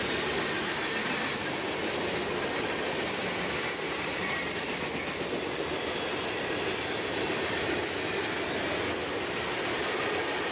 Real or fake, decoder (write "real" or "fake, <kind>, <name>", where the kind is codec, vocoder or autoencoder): real